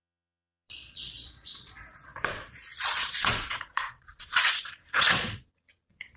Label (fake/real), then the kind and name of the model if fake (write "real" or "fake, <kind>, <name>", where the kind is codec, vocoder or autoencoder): fake, vocoder, Vocos